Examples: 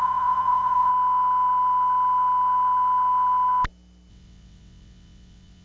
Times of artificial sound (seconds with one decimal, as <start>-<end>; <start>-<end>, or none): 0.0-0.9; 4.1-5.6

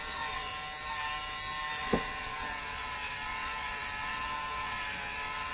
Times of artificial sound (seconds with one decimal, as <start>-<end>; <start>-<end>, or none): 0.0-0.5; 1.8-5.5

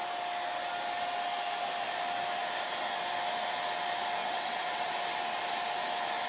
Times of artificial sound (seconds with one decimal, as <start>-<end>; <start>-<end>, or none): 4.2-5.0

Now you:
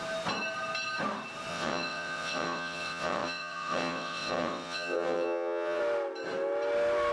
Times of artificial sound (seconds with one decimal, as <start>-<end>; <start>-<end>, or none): 1.5-5.8